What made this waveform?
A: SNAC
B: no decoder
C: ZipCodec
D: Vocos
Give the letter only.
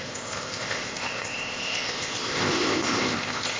C